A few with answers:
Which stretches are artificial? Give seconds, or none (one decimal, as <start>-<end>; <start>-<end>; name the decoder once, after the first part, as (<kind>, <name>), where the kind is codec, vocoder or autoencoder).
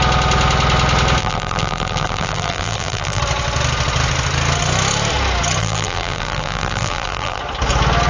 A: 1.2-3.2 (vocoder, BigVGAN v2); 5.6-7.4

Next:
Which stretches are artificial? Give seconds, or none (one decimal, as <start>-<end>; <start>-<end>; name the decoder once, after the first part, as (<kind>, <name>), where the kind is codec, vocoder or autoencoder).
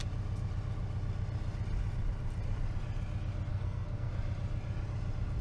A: 3.5-4.1 (codec, SNAC)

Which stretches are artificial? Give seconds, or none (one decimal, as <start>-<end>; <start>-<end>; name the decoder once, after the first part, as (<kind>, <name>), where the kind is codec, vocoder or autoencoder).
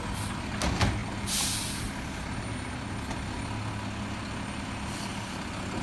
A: none